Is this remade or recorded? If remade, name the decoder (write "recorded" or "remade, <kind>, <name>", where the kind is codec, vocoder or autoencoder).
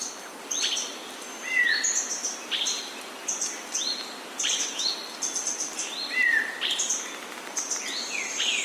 recorded